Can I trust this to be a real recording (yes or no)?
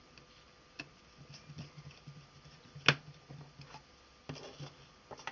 yes